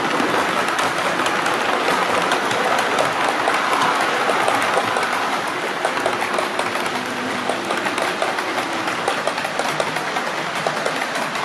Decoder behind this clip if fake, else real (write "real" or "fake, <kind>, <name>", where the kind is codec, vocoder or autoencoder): real